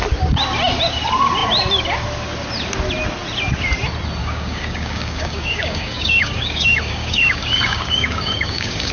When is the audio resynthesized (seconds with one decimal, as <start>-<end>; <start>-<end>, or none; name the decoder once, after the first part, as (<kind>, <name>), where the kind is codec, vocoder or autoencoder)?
4.2-8.9 (codec, DAC)